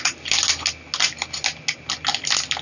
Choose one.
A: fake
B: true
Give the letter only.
B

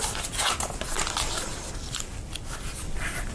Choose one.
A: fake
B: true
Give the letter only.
B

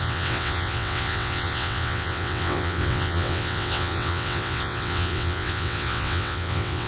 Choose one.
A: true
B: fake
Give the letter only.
B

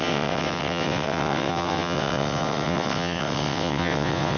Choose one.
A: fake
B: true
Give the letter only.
A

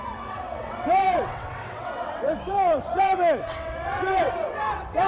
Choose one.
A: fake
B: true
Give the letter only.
A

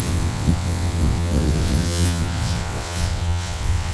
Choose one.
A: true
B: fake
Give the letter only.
B